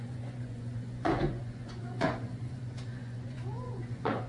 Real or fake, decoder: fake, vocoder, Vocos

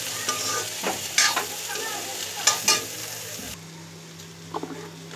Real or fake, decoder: real